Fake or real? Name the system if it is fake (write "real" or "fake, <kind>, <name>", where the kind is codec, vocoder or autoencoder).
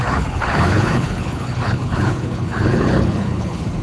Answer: fake, codec, HILCodec